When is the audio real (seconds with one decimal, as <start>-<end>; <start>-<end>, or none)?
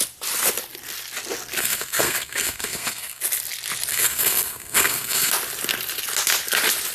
0.0-1.6; 3.2-3.9; 5.3-6.9